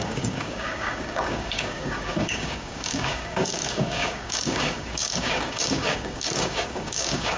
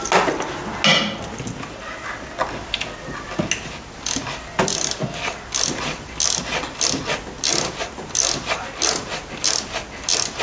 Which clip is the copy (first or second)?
first